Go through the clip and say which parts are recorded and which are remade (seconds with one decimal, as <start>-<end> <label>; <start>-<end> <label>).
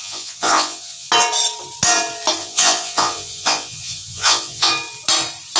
0.0-1.1 remade; 1.1-2.4 recorded; 2.4-4.7 remade; 4.7-5.6 recorded